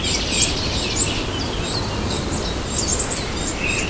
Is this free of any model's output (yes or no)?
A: yes